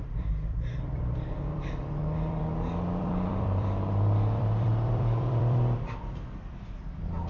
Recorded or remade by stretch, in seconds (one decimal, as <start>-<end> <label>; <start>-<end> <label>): 0.0-2.5 remade; 2.5-3.0 recorded; 3.0-7.3 remade